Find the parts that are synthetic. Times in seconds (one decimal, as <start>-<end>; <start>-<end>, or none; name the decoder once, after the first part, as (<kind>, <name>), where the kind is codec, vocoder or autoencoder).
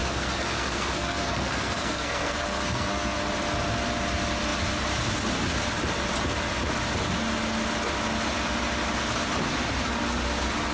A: 0.0-3.2 (codec, SNAC)